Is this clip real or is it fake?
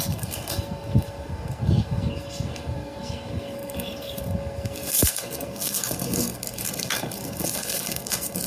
fake